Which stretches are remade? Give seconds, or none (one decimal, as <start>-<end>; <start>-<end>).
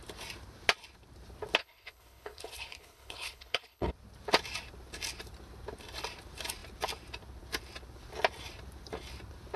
1.6-3.9